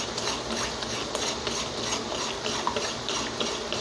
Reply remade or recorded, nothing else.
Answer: recorded